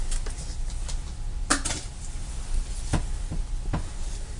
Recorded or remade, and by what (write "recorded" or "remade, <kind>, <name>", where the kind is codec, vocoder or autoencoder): recorded